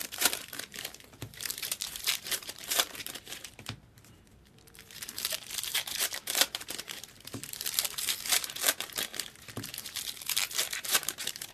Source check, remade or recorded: remade